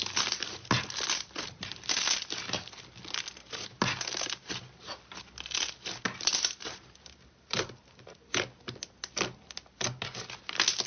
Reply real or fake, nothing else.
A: real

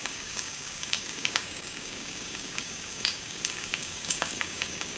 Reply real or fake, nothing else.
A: fake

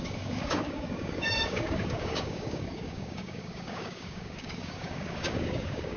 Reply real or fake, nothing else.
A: fake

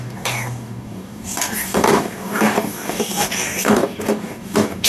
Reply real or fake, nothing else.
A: fake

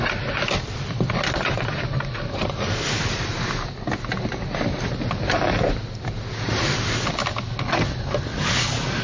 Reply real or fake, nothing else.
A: real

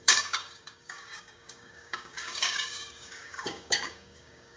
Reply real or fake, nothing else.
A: fake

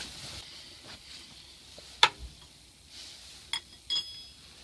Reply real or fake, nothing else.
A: real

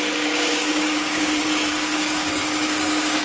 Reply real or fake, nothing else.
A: fake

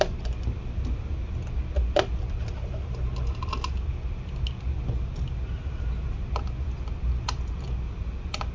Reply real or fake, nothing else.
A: real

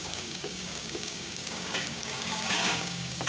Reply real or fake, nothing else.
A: fake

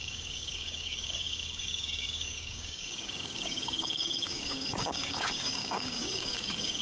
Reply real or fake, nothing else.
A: fake